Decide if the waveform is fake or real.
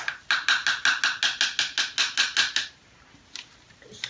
real